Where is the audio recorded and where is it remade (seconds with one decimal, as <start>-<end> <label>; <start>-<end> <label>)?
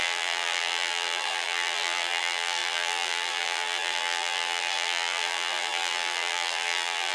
0.0-7.1 remade